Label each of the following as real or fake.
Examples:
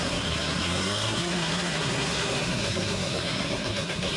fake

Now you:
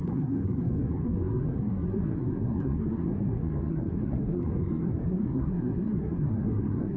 fake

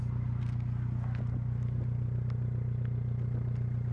real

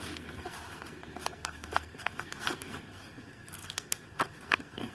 fake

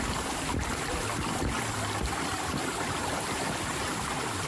real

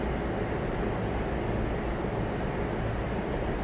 real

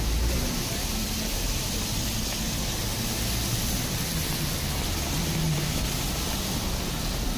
real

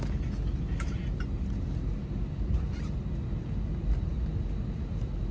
real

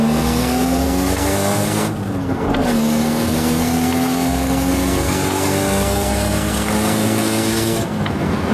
fake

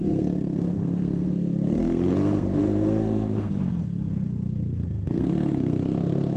fake